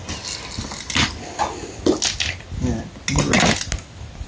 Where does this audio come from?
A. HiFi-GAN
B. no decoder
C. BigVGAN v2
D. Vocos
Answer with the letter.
B